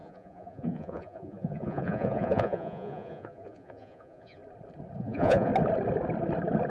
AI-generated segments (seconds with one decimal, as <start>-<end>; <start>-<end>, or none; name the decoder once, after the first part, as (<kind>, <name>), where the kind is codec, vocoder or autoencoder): 0.0-4.4 (vocoder, Vocos); 5.0-5.5

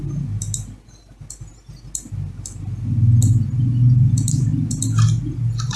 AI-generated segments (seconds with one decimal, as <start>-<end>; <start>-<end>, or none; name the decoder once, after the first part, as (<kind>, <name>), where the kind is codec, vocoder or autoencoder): none

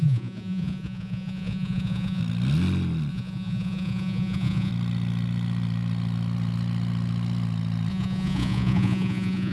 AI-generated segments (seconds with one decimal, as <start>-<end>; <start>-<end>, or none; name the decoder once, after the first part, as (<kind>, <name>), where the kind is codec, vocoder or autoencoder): 0.0-2.2 (vocoder, Vocos); 3.1-4.7; 7.9-9.5

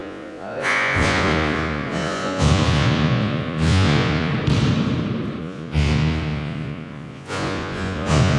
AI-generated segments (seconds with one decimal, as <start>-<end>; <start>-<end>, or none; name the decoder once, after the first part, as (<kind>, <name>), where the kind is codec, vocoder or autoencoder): 0.0-4.3 (vocoder, Vocos); 5.4-8.4

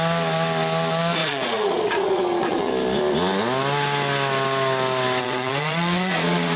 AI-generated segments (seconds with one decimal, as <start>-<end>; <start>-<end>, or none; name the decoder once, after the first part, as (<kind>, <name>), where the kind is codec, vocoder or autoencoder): 1.2-2.7 (vocoder, Vocos); 5.2-6.6

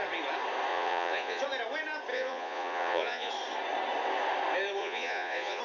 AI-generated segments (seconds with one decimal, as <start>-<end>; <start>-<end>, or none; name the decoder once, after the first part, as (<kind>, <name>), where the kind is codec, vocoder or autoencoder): 0.7-1.4 (vocoder, Vocos); 2.1-3.3; 4.8-5.6

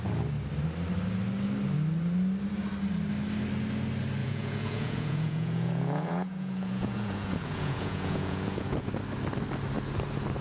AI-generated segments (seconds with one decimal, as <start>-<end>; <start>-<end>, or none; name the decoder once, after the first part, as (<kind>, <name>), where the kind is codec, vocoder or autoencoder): 4.2-8.9 (vocoder, Vocos)